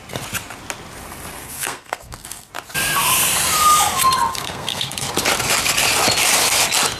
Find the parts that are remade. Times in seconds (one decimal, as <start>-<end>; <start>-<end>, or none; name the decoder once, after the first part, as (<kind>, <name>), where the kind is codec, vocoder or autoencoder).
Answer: 1.3-2.5 (codec, SNAC); 4.3-5.1